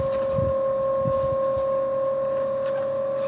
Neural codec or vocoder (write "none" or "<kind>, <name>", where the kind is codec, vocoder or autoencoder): none